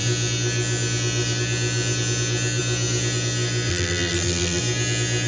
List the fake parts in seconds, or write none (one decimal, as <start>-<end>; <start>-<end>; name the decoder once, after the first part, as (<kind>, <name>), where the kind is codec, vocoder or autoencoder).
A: 3.7-4.6 (vocoder, BigVGAN v2)